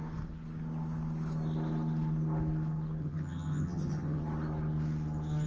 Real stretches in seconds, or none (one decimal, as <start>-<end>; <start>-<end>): 0.0-3.0; 4.2-5.5